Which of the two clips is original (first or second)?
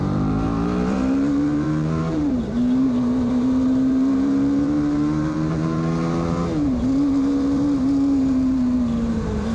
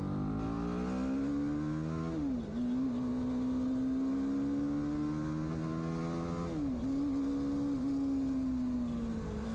second